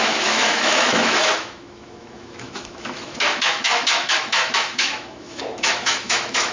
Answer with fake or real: fake